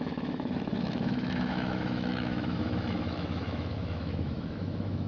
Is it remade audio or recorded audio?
remade